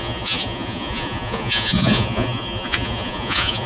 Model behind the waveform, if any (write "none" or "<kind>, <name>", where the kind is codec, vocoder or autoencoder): vocoder, Vocos